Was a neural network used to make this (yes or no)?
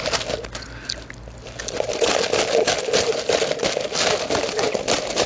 no